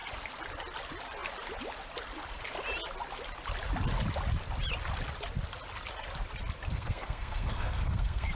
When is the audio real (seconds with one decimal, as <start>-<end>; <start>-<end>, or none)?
0.0-6.7

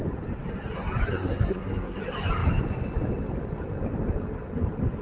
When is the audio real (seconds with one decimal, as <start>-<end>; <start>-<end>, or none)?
0.0-1.1; 2.0-5.0

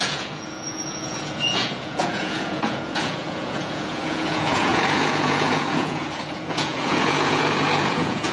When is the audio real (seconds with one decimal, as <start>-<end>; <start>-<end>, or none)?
none

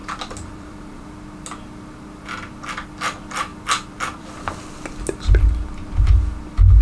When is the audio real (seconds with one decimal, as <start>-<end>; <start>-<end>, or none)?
1.1-3.5; 4.5-6.8

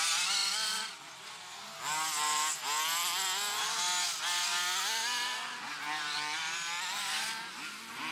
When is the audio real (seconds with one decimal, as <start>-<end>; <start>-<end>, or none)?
0.0-0.4; 1.0-8.1